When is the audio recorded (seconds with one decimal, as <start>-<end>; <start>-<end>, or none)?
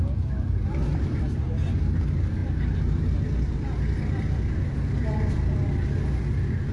0.0-6.7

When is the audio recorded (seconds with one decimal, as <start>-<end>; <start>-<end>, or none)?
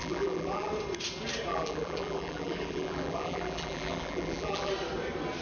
0.7-1.5; 4.7-5.4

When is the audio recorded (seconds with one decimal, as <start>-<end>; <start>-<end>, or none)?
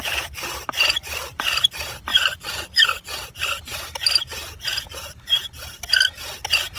0.0-2.1; 2.9-6.8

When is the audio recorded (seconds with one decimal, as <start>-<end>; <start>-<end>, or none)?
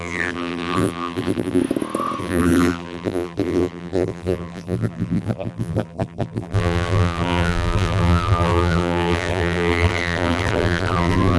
1.6-2.2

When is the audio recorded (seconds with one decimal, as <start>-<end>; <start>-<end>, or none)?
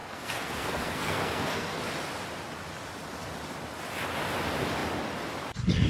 1.8-5.9